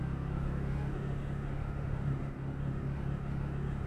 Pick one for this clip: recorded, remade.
remade